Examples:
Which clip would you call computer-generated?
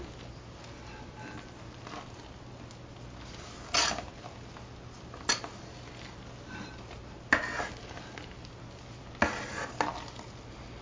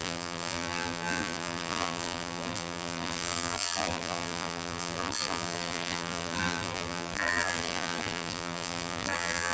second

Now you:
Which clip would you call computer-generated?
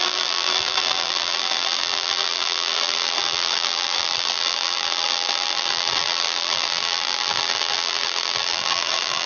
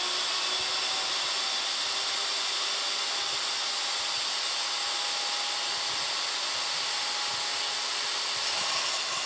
first